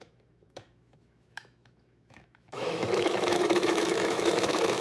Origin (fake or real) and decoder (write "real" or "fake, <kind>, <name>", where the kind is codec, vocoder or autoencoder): fake, autoencoder, DAC-VAE